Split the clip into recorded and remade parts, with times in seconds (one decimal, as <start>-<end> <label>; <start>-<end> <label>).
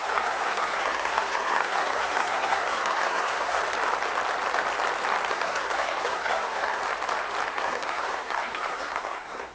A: 0.0-3.6 remade; 3.6-5.3 recorded; 5.3-6.8 remade; 6.8-7.5 recorded; 7.5-9.5 remade